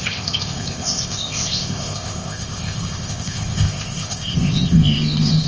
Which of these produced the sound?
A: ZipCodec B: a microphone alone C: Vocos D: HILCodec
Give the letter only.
A